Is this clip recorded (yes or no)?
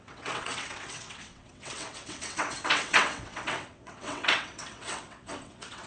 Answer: no